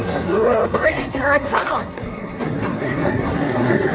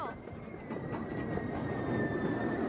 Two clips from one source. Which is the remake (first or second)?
first